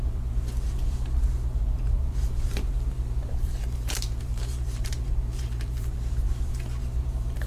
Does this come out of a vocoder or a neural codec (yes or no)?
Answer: yes